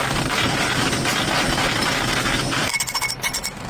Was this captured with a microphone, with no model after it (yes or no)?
yes